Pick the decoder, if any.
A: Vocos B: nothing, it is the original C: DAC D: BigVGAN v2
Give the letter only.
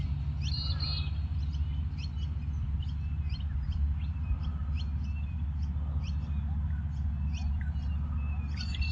B